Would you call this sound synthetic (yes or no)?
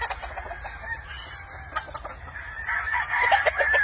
no